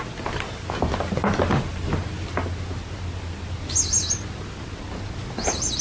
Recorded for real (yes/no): yes